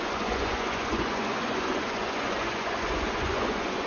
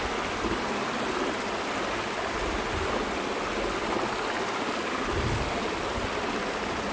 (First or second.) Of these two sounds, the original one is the second